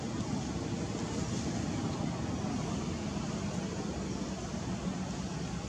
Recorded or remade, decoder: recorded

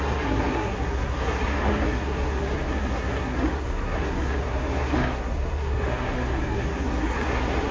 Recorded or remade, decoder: remade, codec, SNAC